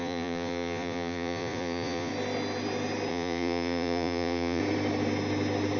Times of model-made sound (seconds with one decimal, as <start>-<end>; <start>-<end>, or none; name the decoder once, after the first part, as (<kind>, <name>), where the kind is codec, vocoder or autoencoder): 0.0-2.1 (vocoder, Vocos); 3.1-4.6